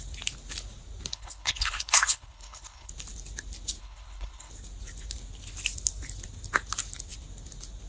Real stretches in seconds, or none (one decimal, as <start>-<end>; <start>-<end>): 0.0-1.1; 2.9-3.8; 4.5-7.9